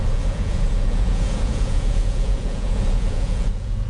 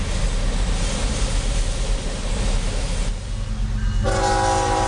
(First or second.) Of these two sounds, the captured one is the second